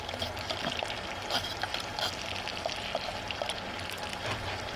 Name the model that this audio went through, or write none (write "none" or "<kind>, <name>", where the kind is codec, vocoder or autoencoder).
none